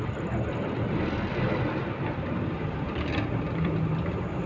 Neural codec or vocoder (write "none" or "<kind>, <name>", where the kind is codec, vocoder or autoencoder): vocoder, BigVGAN v2